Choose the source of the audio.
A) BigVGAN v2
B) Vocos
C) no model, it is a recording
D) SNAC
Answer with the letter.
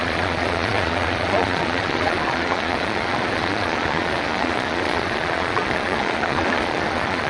B